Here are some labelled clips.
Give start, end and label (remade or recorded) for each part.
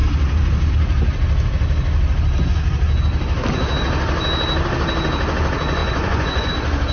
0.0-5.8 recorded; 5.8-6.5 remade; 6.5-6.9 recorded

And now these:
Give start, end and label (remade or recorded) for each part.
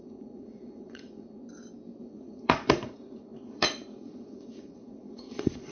0.0-1.4 remade; 1.4-2.0 recorded; 2.0-5.7 remade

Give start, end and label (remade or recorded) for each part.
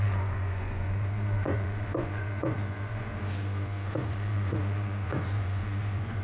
0.0-3.1 remade; 3.1-4.1 recorded; 4.1-6.2 remade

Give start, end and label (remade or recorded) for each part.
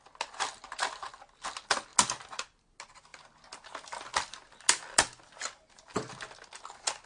0.0-7.1 recorded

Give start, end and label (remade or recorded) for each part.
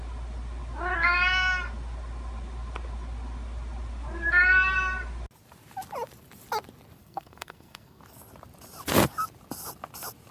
0.0-7.0 recorded; 7.0-8.0 remade; 8.0-10.3 recorded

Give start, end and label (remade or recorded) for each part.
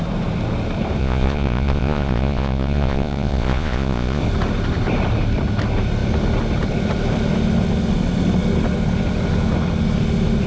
0.0-1.0 recorded; 1.0-4.2 remade; 4.2-10.5 recorded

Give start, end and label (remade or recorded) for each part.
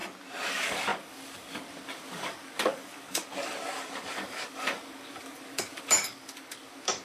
0.0-0.5 recorded; 0.5-7.0 remade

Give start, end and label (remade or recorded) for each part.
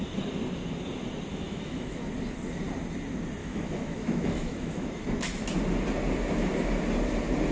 0.0-1.3 recorded; 1.3-2.1 remade; 2.1-3.4 recorded; 3.4-5.0 remade; 5.0-7.5 recorded